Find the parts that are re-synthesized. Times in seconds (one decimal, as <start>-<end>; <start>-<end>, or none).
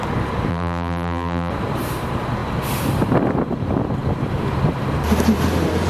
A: 0.5-1.5